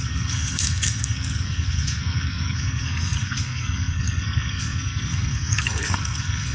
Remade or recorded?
remade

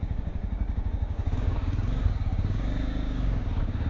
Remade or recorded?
remade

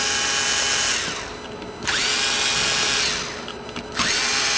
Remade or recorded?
recorded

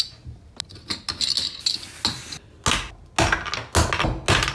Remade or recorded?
recorded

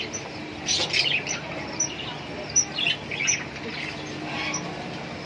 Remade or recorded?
recorded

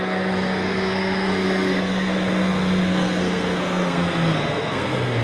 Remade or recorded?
remade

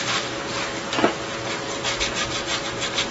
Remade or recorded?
remade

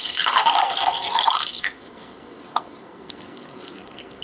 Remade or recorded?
remade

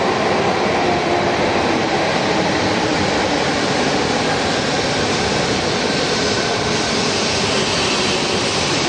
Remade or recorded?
remade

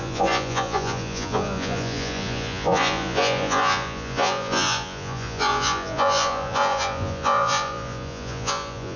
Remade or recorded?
remade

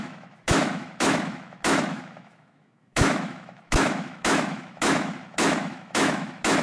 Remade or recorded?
remade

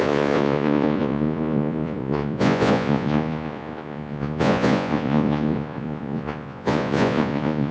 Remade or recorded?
remade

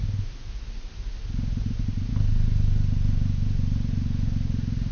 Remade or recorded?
recorded